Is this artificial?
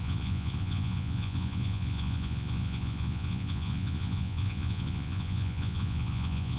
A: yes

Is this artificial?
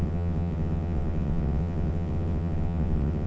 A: yes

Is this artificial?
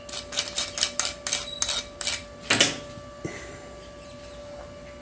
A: no